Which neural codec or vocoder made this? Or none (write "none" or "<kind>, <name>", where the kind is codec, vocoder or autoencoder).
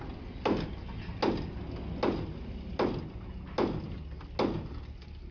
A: none